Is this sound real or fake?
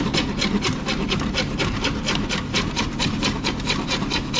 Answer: fake